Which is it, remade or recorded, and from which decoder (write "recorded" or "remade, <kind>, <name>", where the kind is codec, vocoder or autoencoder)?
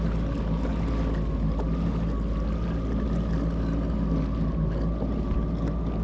recorded